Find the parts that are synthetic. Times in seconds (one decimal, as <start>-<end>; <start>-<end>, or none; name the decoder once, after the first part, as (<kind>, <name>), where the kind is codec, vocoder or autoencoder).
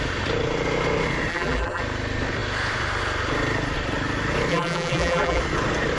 1.3-1.8 (vocoder, BigVGAN v2); 4.5-5.4